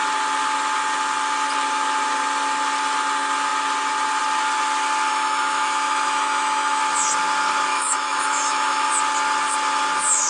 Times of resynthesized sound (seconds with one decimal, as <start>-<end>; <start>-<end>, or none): 5.1-6.8; 7.7-8.9